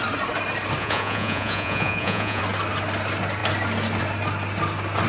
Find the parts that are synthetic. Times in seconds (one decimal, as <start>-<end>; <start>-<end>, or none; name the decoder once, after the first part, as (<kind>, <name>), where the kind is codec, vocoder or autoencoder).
0.8-2.4 (vocoder, Vocos)